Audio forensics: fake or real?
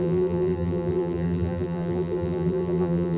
fake